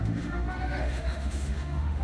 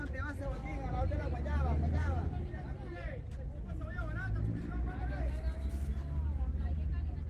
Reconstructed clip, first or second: first